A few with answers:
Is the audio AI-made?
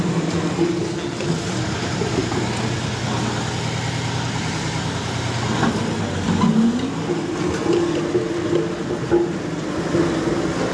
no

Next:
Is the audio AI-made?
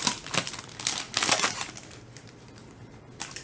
no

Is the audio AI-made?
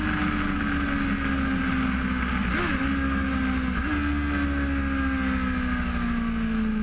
no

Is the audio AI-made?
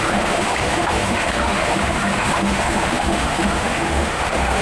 yes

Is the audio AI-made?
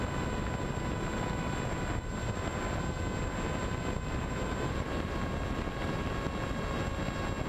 no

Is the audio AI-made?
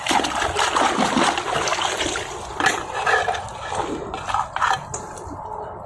no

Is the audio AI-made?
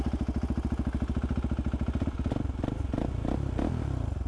no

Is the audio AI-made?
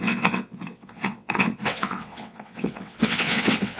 yes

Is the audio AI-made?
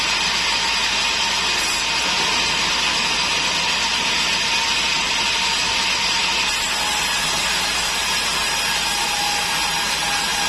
no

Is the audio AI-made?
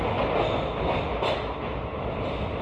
no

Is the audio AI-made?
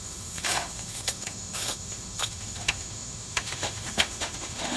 yes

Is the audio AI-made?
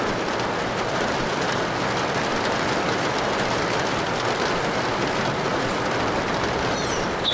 no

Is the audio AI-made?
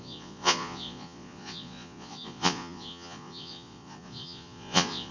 yes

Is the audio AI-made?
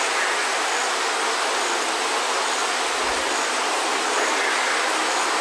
no